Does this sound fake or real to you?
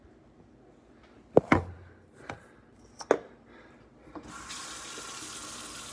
real